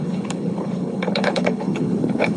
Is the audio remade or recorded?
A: remade